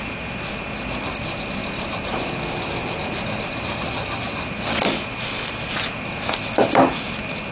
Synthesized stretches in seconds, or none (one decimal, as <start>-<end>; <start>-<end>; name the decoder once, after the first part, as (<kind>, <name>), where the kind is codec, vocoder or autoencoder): none